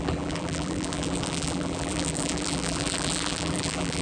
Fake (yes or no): yes